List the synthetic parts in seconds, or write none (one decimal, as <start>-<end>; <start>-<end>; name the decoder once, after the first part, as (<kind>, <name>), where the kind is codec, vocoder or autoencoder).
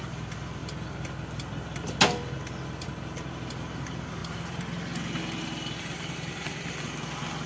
none